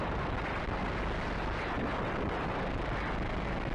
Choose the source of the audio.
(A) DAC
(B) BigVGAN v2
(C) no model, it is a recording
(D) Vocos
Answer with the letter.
C